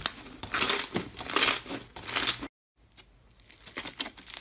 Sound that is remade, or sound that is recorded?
recorded